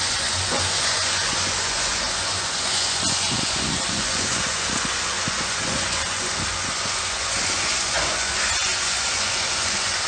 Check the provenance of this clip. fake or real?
fake